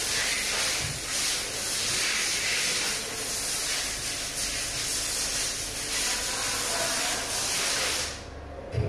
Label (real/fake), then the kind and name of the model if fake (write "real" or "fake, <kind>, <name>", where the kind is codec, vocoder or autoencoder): real